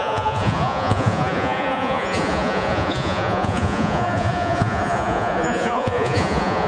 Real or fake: fake